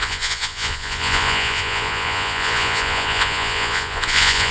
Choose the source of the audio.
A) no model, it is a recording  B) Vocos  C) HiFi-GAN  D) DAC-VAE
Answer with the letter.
B